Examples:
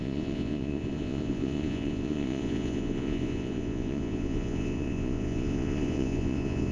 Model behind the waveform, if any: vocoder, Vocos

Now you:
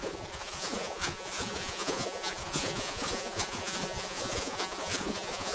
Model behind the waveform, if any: vocoder, Vocos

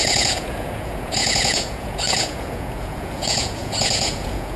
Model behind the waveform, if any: vocoder, Vocos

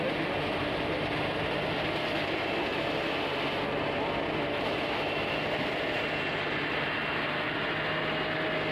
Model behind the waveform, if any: none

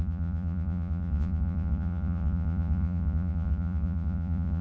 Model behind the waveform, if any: vocoder, Vocos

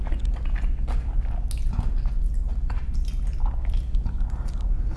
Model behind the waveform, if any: none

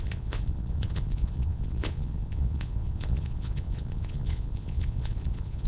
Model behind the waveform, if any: vocoder, Vocos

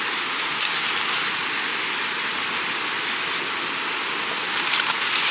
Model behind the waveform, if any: none